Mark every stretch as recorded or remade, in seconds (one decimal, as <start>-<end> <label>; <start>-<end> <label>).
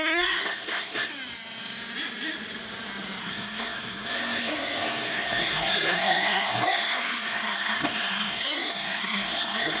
0.0-1.1 remade; 1.1-3.2 recorded; 3.2-9.8 remade